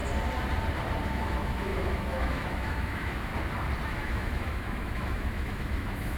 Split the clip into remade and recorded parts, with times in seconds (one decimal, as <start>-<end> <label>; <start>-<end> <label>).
0.0-1.0 recorded; 1.0-3.3 remade; 3.3-3.9 recorded; 3.9-6.2 remade